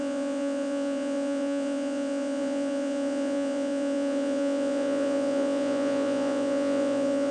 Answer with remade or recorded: remade